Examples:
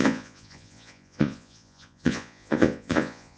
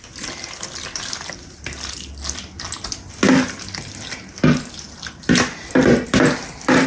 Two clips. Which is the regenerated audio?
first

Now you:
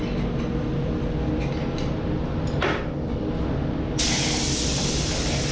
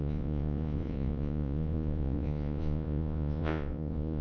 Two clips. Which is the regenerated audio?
second